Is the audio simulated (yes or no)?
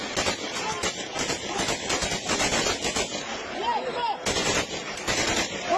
no